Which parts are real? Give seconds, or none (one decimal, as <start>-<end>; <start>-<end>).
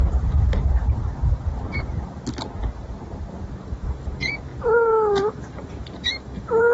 0.0-3.6; 4.5-5.1